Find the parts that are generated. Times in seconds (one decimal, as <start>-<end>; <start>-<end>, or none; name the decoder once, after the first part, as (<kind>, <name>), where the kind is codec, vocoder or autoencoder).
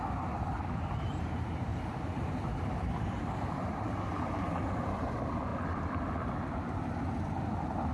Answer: 0.0-5.5 (vocoder, BigVGAN v2)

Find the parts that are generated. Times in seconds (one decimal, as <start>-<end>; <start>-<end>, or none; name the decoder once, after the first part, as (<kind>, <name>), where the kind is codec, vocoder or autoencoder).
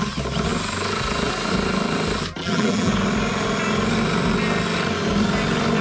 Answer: 2.4-2.9 (vocoder, BigVGAN v2)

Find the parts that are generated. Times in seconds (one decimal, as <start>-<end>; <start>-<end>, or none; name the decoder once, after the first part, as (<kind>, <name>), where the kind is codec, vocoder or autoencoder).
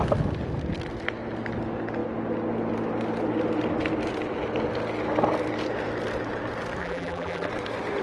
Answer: 6.8-7.5 (vocoder, BigVGAN v2)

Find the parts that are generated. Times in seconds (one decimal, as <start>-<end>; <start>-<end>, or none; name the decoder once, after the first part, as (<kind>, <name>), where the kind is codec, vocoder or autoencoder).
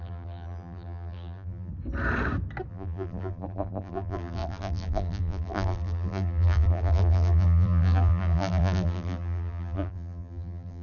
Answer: 0.0-1.7 (vocoder, BigVGAN v2); 2.7-10.8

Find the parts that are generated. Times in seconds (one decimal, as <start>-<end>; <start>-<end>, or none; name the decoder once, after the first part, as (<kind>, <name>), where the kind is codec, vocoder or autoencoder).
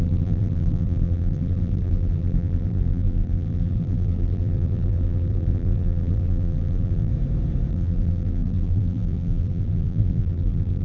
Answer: 0.0-7.1 (vocoder, BigVGAN v2); 7.7-10.8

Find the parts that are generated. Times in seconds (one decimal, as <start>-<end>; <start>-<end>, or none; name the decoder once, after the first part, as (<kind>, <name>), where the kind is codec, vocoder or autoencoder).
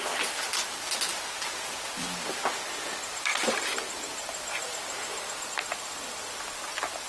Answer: 4.2-5.2 (vocoder, BigVGAN v2)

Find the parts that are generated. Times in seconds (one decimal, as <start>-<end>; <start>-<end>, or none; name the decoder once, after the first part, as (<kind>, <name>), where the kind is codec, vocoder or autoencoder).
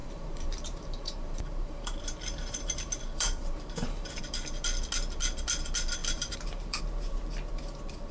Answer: 0.0-4.2 (vocoder, BigVGAN v2); 6.0-6.8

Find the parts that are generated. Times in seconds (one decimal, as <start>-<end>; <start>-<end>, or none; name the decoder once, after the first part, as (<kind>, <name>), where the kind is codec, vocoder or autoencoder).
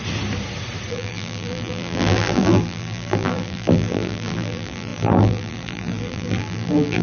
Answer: 0.9-7.0 (vocoder, BigVGAN v2)